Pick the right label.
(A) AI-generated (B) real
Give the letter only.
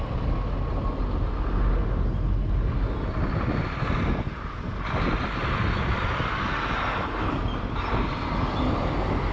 B